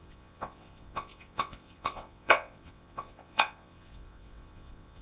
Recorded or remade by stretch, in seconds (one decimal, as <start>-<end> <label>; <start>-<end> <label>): 0.0-5.0 remade